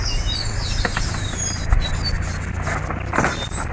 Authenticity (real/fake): real